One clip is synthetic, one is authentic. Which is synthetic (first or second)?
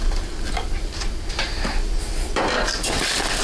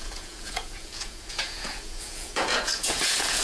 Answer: second